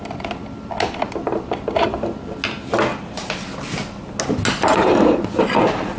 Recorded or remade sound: recorded